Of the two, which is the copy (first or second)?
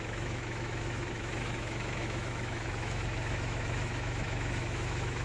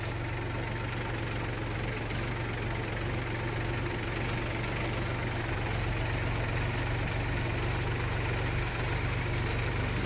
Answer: first